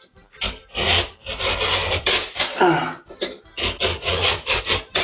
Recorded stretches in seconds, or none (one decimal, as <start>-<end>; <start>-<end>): 0.0-3.9; 4.6-5.0